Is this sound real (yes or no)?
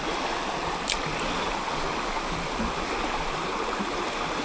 yes